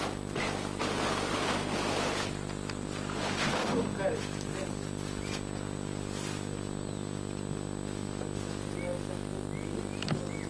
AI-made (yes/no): no